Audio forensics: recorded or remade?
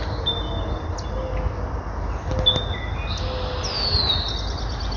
recorded